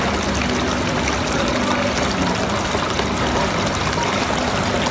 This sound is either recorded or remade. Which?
recorded